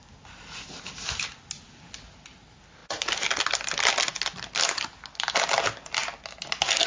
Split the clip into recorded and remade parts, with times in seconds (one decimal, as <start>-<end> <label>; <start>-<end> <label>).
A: 0.0-6.9 recorded

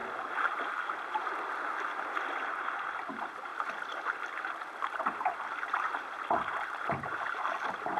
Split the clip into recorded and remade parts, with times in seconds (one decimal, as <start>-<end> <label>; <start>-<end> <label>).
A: 0.0-8.0 recorded

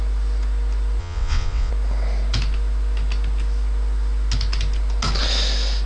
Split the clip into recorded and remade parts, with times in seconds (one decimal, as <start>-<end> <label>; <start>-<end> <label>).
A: 0.0-1.0 recorded; 1.0-1.7 remade; 1.7-5.9 recorded

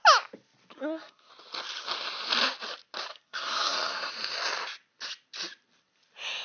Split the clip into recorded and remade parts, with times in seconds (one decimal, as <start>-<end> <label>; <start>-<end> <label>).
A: 0.0-0.8 recorded; 0.8-1.3 remade; 1.3-3.1 recorded; 3.1-4.1 remade; 4.1-6.4 recorded

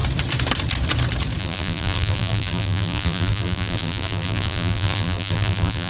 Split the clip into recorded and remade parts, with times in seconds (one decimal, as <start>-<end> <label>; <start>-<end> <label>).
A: 0.0-1.4 recorded; 1.4-5.9 remade

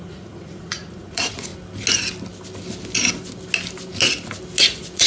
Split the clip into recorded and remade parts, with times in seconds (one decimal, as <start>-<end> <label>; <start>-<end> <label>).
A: 0.0-1.5 remade; 1.5-4.6 recorded; 4.6-5.1 remade